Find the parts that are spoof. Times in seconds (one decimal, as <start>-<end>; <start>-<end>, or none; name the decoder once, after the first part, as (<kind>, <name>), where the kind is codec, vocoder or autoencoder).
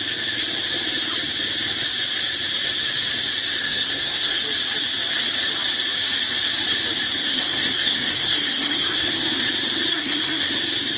3.6-4.4 (codec, SNAC); 7.2-9.1; 9.9-10.5